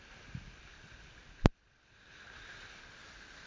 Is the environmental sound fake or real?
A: real